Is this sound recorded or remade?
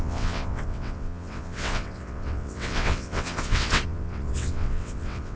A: remade